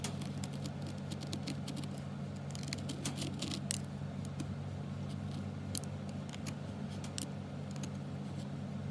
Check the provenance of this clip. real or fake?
real